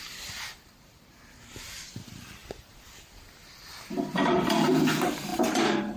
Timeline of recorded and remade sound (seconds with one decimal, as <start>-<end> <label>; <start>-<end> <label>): 0.0-2.4 remade; 2.4-4.1 recorded; 4.1-6.0 remade